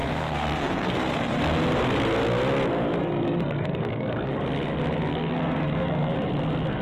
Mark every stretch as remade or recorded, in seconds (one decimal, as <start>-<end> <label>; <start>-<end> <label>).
0.0-1.4 remade; 1.4-3.0 recorded; 3.0-4.3 remade; 4.3-5.1 recorded; 5.1-6.1 remade; 6.1-6.8 recorded